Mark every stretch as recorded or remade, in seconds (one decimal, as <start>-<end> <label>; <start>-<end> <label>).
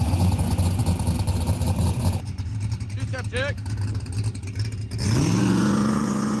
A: 0.0-0.8 remade; 0.8-1.9 recorded; 1.9-2.5 remade; 2.5-5.4 recorded; 5.4-6.4 remade